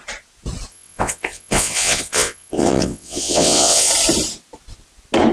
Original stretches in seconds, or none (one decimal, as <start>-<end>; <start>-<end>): 0.0-0.7; 3.9-5.3